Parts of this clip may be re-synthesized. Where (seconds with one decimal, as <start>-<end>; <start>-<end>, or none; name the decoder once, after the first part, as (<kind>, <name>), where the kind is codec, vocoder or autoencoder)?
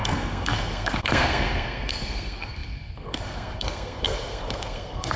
0.0-5.2 (codec, SNAC)